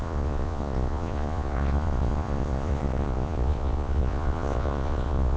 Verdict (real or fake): fake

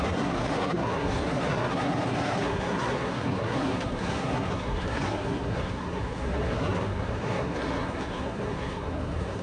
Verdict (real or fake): fake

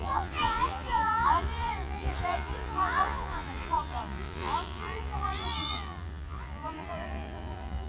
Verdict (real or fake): fake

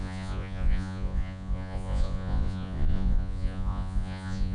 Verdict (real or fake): fake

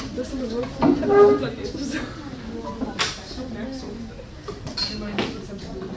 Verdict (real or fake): real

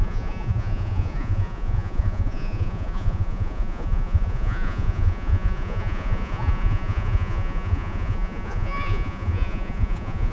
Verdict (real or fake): fake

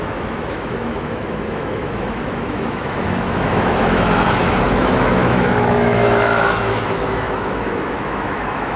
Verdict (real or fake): fake